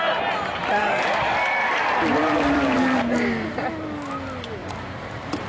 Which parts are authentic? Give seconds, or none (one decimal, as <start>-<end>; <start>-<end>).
0.0-0.8; 1.7-2.2; 2.8-5.5